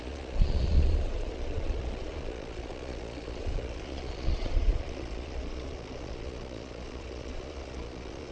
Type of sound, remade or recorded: remade